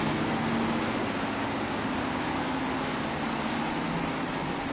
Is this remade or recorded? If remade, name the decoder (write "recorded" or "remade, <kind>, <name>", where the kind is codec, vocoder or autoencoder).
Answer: recorded